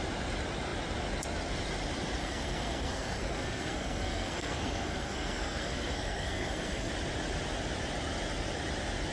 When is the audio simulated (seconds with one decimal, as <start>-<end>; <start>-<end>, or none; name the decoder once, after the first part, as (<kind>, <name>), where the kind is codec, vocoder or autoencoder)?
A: 2.2-6.9 (codec, SNAC)